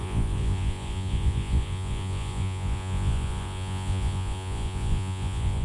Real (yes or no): no